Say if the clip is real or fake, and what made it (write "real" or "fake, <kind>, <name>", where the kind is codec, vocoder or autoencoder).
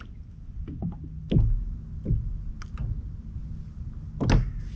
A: real